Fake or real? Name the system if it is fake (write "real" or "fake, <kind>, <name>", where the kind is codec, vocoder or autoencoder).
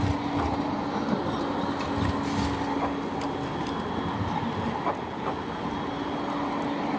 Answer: real